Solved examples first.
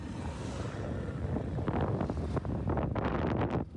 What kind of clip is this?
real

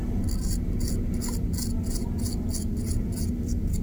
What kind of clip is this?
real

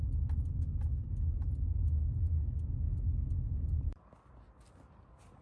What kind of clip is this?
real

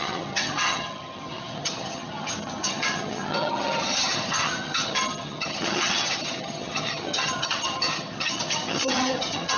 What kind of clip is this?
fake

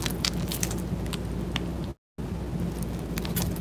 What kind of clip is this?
real